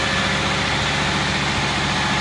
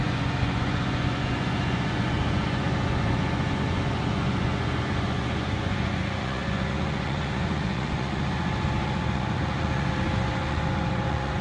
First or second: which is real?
first